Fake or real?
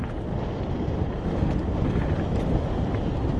real